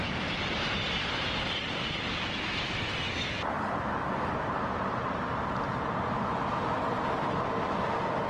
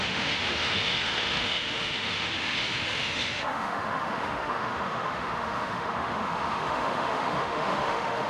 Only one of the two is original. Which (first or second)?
first